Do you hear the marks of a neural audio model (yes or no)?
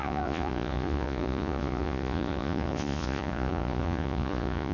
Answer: yes